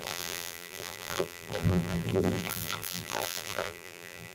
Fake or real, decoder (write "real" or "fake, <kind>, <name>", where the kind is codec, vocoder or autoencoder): fake, vocoder, BigVGAN v2